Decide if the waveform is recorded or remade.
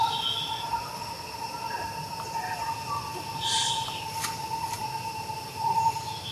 recorded